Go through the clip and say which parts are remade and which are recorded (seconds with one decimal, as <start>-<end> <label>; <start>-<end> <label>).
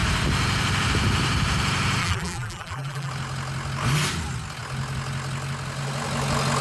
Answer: 0.0-2.0 recorded; 2.0-3.1 remade; 3.1-6.6 recorded